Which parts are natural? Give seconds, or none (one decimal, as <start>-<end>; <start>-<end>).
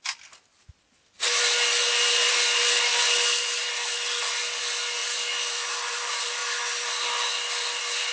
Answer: 0.0-8.1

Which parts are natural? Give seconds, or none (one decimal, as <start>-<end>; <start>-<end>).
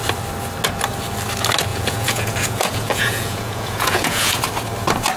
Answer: 0.0-1.7; 4.4-5.2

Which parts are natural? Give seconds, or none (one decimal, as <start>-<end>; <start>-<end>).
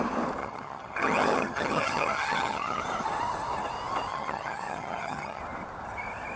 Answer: 0.0-0.4; 2.8-4.1; 5.4-6.4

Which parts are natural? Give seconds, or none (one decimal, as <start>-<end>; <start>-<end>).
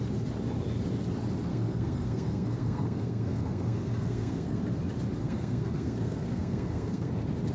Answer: 0.0-1.5; 4.6-5.2; 7.1-7.5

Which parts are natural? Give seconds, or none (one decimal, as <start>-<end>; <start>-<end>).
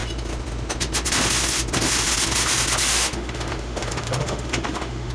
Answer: 0.0-2.9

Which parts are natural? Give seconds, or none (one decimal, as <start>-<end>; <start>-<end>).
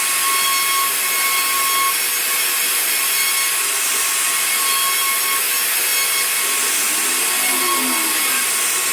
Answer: 0.0-8.9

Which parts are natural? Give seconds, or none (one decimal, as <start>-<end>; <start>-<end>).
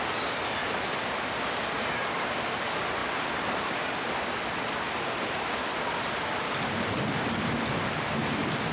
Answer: 0.0-8.7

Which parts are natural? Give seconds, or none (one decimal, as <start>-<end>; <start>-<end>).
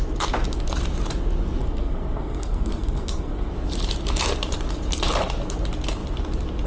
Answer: 0.0-1.6; 3.5-6.7